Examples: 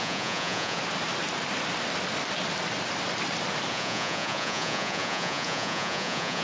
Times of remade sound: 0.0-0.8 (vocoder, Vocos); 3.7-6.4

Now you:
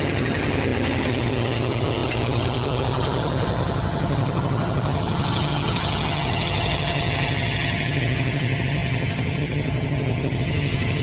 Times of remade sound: 0.0-11.0 (vocoder, HiFi-GAN)

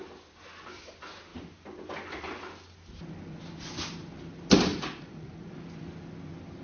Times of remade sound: 4.7-5.5 (vocoder, Vocos)

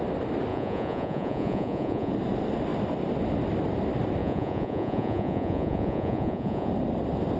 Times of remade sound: 0.5-2.1 (vocoder, Vocos); 4.2-6.7

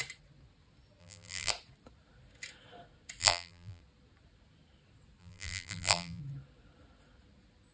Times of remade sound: 1.0-1.5 (vocoder, BigVGAN v2); 3.2-3.8; 5.2-6.2

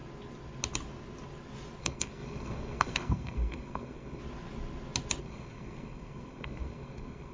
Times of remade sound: 1.8-4.2 (codec, SNAC); 5.2-7.3

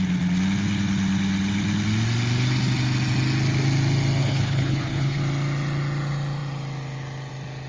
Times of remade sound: 4.2-5.2 (codec, HILCodec)